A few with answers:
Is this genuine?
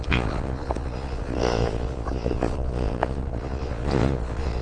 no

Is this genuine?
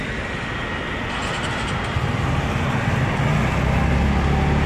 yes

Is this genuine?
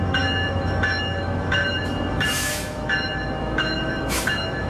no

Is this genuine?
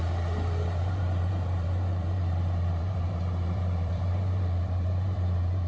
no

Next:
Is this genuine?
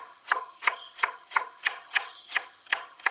no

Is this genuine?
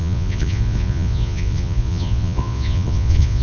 no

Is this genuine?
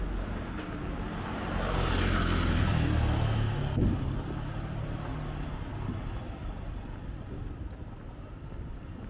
yes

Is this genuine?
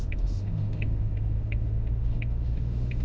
no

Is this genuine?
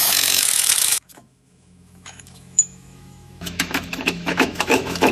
no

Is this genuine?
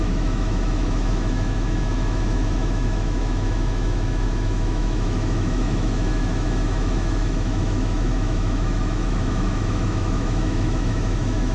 no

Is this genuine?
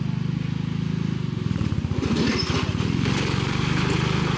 yes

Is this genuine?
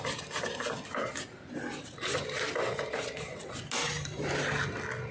yes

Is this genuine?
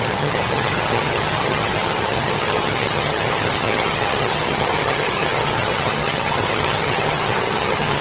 no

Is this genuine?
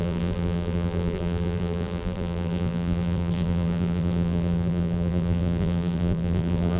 no